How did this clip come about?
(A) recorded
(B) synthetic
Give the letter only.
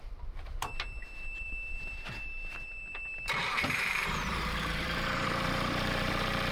B